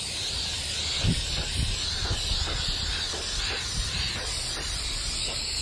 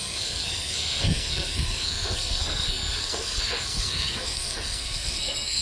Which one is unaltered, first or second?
first